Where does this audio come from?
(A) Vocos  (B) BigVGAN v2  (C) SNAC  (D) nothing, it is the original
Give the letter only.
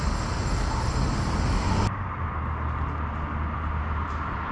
D